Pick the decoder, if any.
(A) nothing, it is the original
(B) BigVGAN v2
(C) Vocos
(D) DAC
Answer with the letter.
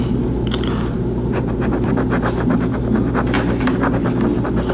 A